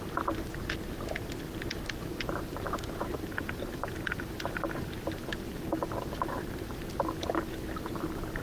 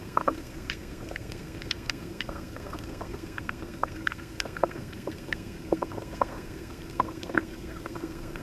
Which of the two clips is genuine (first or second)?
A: first